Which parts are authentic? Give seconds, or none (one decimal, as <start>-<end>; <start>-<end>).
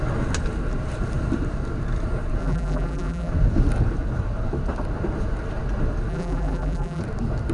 0.0-2.4; 3.3-6.1; 7.0-7.5